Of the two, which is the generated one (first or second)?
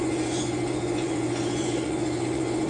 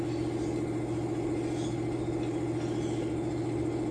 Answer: first